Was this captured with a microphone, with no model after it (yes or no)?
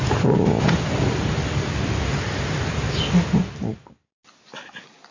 yes